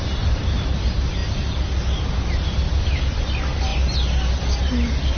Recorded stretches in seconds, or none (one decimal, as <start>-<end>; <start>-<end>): 1.2-3.2; 3.7-5.2